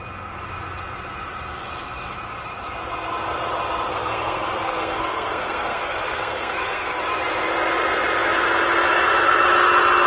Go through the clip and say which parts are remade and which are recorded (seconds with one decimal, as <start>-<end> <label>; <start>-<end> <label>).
0.0-3.9 recorded; 3.9-7.0 remade; 7.0-10.1 recorded

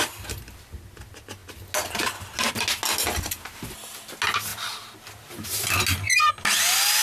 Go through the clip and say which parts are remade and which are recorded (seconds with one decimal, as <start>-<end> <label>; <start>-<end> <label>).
0.0-7.0 recorded